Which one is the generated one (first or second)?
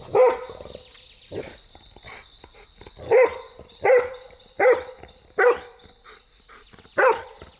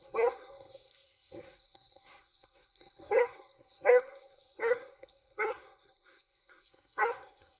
second